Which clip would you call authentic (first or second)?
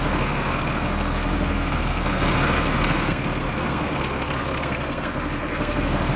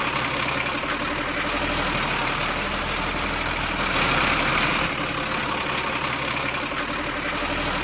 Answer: second